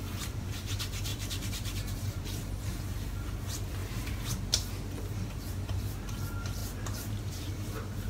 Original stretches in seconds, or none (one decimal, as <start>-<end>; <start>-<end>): 0.0-1.1; 2.8-8.1